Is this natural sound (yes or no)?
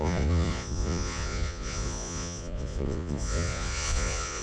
no